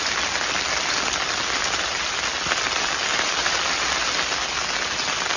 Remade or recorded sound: recorded